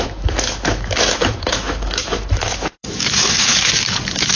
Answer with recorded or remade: remade